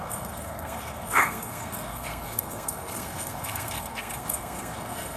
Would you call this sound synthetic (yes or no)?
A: yes